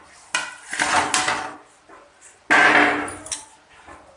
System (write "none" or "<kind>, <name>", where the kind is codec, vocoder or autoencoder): none